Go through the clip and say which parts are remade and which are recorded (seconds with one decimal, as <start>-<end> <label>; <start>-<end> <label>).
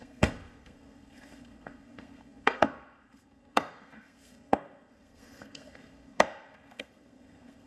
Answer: 0.0-7.7 remade